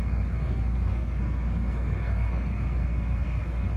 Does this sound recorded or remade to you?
remade